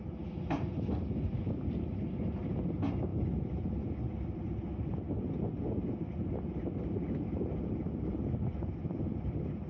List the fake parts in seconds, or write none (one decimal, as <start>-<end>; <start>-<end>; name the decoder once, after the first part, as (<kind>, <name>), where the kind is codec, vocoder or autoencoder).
3.1-4.6 (vocoder, BigVGAN v2)